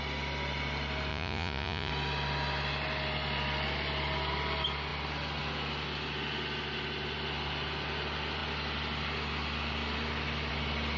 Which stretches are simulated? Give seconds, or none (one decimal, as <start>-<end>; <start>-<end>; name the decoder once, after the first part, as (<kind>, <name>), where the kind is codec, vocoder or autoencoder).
1.1-1.9 (vocoder, Vocos)